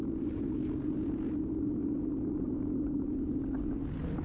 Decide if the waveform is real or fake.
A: real